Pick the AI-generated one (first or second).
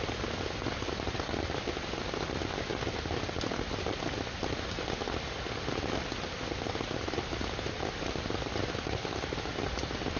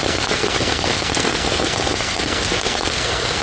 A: second